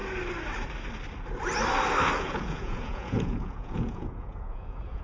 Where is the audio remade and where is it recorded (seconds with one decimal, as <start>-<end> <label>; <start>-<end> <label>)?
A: 0.0-2.2 recorded; 2.2-5.0 remade